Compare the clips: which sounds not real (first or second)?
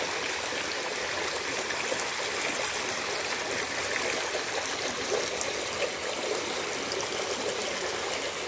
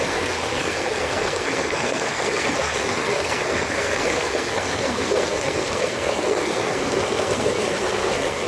second